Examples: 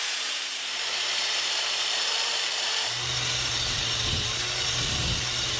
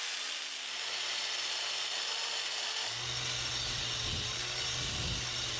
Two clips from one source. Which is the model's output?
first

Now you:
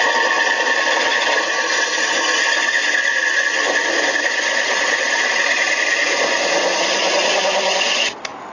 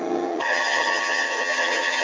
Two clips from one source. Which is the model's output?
second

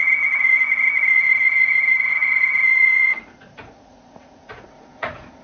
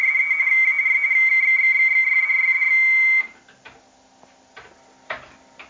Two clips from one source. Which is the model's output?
first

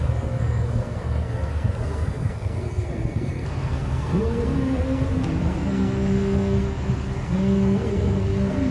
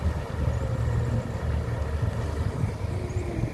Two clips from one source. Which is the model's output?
first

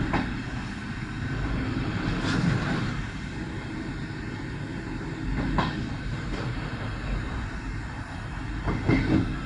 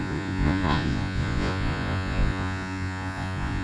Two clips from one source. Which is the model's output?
second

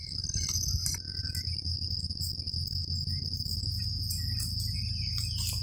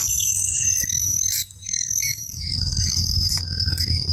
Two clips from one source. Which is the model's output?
second